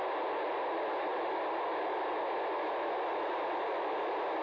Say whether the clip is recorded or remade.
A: recorded